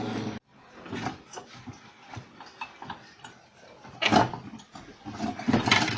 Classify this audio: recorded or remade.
recorded